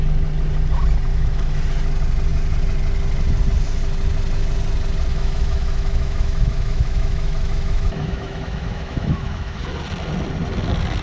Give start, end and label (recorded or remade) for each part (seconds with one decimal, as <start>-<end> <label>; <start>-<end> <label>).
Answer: 0.0-1.1 recorded; 1.1-1.6 remade; 1.6-5.1 recorded; 5.1-9.6 remade; 9.6-11.0 recorded